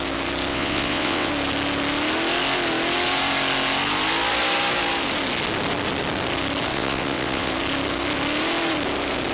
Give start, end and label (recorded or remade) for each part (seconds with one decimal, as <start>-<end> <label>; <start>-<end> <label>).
0.0-0.5 recorded; 0.5-1.3 remade; 1.3-6.7 recorded; 6.7-7.5 remade; 7.5-9.3 recorded